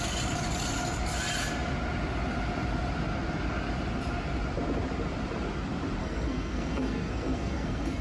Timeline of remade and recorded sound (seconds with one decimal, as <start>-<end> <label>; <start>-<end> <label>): 0.0-6.0 recorded; 6.0-8.0 remade